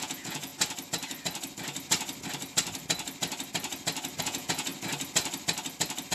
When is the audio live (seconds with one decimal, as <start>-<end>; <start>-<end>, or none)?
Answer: 0.5-4.2; 4.7-6.1